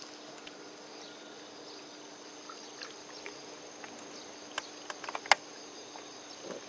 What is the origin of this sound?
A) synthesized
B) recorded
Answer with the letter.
B